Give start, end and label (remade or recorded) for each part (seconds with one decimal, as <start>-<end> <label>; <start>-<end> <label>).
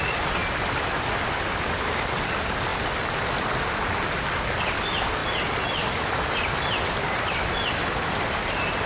0.0-8.9 recorded